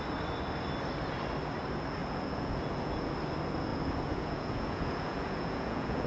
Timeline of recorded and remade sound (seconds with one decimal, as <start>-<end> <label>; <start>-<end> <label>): 0.0-2.0 recorded; 2.0-3.1 remade; 3.1-3.7 recorded; 3.7-6.1 remade